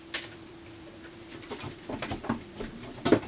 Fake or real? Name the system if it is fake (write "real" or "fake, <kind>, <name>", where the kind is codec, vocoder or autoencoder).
real